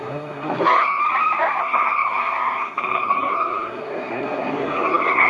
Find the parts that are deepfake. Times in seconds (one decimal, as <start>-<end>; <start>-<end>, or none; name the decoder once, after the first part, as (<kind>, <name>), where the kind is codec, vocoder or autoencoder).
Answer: 0.0-1.0 (codec, SNAC); 1.6-5.3